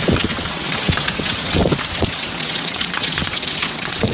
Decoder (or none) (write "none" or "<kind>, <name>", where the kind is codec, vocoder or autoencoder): vocoder, WaveNeXt